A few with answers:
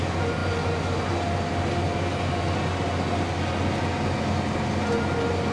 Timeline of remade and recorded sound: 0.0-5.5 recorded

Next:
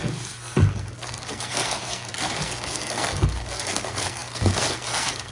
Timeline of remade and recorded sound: 0.0-5.3 remade

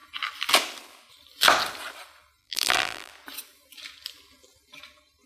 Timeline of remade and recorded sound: 0.0-2.4 recorded; 2.4-3.1 remade; 3.1-5.3 recorded

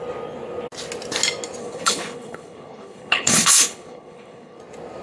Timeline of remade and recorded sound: 0.0-1.6 recorded; 1.6-4.6 remade; 4.6-5.0 recorded

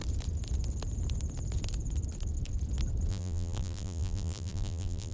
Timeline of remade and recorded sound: 0.0-3.1 recorded; 3.1-5.1 remade

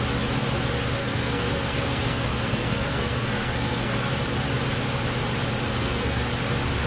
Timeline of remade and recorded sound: 0.0-1.0 recorded; 1.0-4.1 remade; 4.1-5.8 recorded; 5.8-6.3 remade; 6.3-6.9 recorded